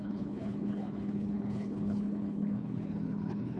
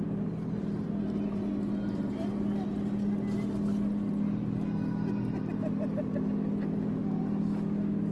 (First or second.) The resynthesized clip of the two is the first